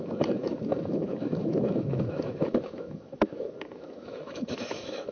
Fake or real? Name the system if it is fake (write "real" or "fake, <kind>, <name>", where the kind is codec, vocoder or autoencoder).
fake, autoencoder, DAC-VAE